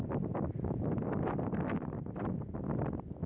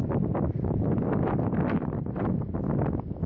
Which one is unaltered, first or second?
second